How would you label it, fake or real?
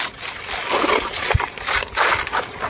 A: real